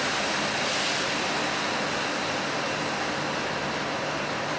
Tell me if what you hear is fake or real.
real